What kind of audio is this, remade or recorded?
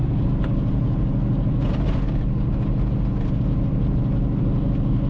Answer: recorded